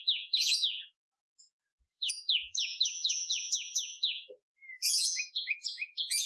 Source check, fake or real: fake